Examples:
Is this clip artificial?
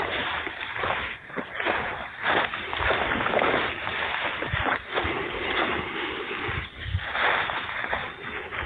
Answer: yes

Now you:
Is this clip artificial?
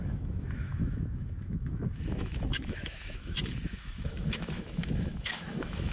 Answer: yes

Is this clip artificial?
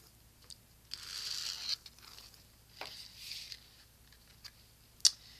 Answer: no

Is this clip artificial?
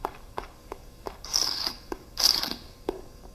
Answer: yes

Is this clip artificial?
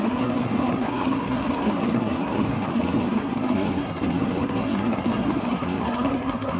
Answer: yes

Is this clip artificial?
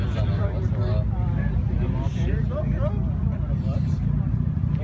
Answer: no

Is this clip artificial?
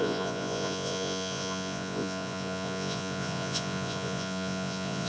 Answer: yes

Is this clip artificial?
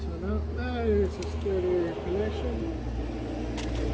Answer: no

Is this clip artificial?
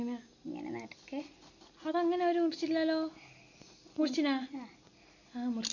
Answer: no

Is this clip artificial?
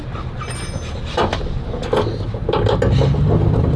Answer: no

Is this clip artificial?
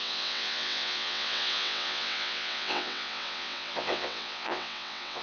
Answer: yes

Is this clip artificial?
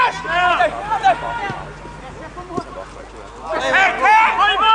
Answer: no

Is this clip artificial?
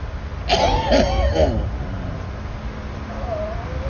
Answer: no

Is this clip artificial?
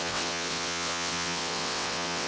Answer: yes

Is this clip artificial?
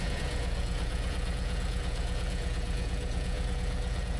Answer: yes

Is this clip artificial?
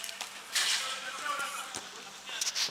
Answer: yes